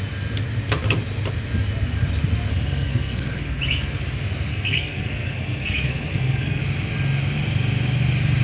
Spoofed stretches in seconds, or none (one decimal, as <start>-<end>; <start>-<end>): 2.5-3.6; 4.5-6.6